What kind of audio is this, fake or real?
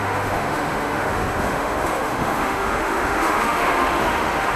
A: fake